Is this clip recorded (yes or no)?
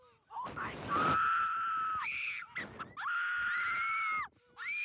yes